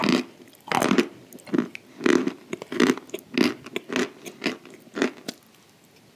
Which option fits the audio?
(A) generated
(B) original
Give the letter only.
B